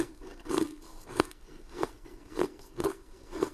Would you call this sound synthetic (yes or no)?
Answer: yes